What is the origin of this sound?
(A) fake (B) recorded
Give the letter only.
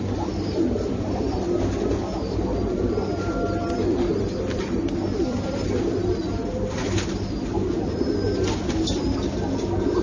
B